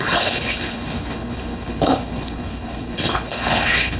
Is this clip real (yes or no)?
no